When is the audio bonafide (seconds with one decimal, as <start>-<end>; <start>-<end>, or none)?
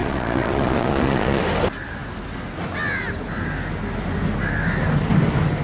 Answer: 1.4-5.6